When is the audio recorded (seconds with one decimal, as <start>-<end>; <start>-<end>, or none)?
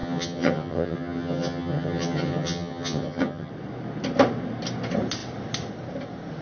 3.5-6.4